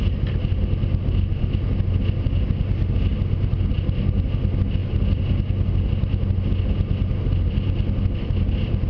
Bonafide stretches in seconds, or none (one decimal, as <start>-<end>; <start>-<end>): 0.0-8.9